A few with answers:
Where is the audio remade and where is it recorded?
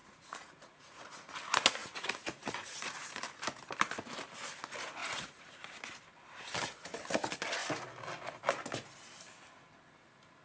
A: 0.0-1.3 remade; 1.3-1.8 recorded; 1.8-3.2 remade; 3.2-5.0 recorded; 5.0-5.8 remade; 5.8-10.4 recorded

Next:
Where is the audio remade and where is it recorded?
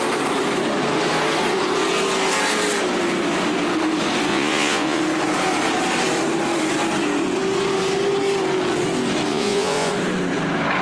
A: 0.0-4.3 recorded; 4.3-5.0 remade; 5.0-9.3 recorded; 9.3-9.9 remade; 9.9-10.8 recorded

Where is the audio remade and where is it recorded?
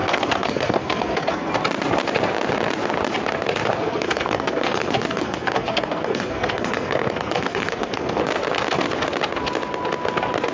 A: 0.0-1.5 remade; 1.5-3.8 recorded; 3.8-8.2 remade; 8.2-10.5 recorded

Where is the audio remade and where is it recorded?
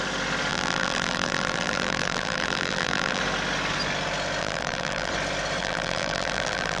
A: 0.0-0.5 recorded; 0.5-3.2 remade; 3.2-4.4 recorded; 4.4-5.1 remade; 5.1-5.6 recorded; 5.6-6.8 remade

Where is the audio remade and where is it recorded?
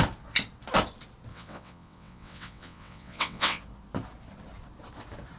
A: 0.0-1.3 recorded; 1.3-3.6 remade; 3.6-5.4 recorded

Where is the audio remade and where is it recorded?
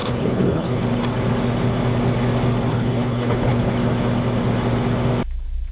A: 0.0-0.8 remade; 0.8-2.7 recorded; 2.7-3.7 remade; 3.7-5.7 recorded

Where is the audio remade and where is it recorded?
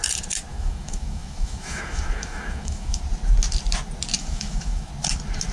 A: 0.0-0.5 recorded; 0.5-3.0 remade; 3.0-4.2 recorded; 4.2-4.9 remade; 4.9-5.5 recorded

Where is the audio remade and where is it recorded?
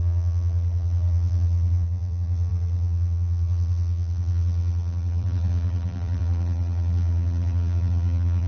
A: 0.0-8.5 remade